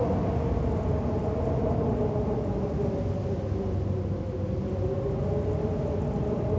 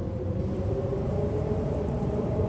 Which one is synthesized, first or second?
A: second